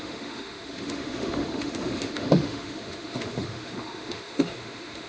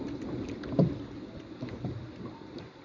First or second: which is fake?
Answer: first